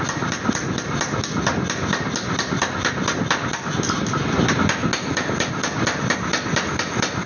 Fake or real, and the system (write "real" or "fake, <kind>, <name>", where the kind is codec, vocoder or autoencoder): real